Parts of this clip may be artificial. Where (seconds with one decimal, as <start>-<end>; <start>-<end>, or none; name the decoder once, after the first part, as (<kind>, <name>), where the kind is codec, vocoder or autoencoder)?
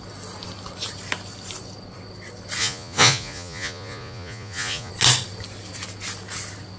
2.6-4.9 (vocoder, Vocos)